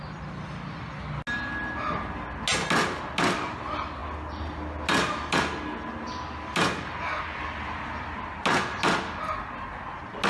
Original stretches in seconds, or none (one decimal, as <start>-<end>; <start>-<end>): 0.0-10.3